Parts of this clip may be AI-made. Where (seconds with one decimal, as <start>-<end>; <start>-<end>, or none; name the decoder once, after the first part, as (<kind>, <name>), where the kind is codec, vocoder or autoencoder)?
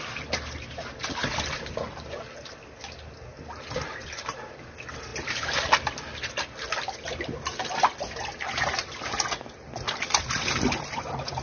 1.2-1.7 (vocoder, BigVGAN v2); 3.3-4.4